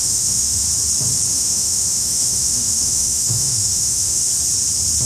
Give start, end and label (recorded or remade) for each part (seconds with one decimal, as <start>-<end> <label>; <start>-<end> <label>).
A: 0.0-0.6 remade; 0.6-1.3 recorded; 1.3-4.3 remade; 4.3-5.1 recorded

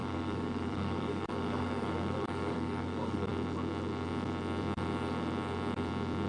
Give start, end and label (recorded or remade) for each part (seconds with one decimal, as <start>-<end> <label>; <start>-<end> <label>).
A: 0.0-3.3 remade; 3.3-6.3 recorded